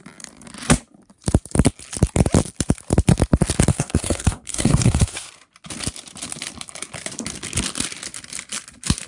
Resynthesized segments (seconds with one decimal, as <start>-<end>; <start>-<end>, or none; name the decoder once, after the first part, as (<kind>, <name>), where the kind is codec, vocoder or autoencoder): 3.7-5.3 (codec, SNAC)